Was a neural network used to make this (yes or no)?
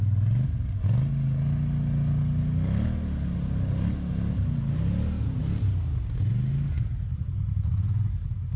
no